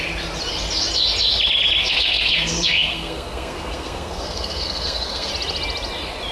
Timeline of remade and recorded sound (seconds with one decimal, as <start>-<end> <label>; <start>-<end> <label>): 0.0-1.8 recorded; 1.8-5.3 remade; 5.3-6.3 recorded